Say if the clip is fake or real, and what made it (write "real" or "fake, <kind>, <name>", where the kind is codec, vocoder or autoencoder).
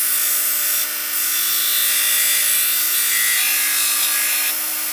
real